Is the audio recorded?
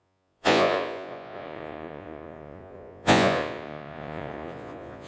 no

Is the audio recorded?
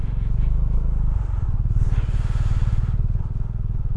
yes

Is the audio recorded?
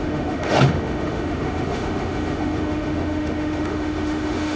no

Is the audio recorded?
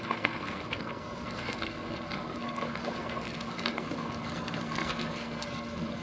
no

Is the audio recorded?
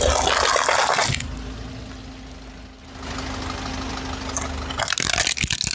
yes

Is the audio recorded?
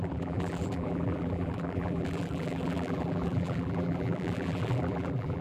no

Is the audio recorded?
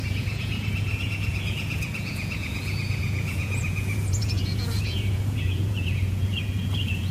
no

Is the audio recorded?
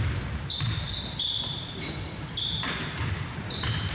no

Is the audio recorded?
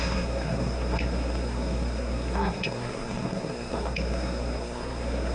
no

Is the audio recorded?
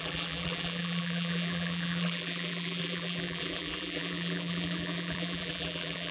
no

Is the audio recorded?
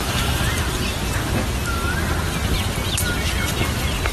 yes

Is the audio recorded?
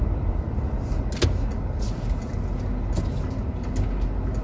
yes